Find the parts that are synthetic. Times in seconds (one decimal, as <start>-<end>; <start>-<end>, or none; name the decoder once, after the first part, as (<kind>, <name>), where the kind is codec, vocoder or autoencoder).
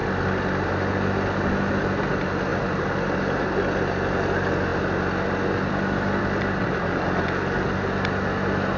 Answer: none